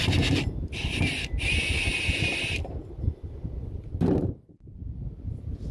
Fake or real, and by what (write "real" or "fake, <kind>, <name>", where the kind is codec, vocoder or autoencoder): real